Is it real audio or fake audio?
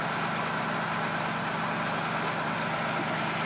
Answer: real